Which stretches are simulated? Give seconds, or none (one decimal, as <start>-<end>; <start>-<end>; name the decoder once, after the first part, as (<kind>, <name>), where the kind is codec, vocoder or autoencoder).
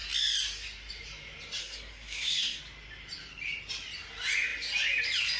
1.6-2.6 (codec, SNAC)